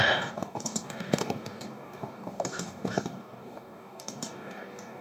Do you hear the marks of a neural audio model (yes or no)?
yes